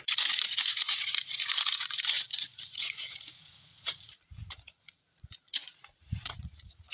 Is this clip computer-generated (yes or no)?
yes